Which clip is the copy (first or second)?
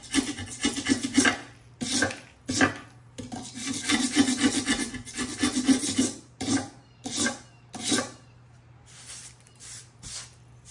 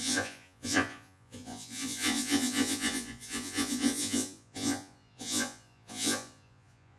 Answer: second